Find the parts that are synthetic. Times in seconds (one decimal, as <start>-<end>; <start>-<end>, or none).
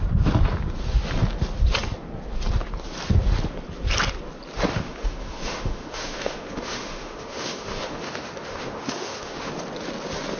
4.7-9.5